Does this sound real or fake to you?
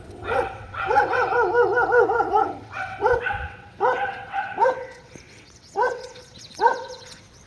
fake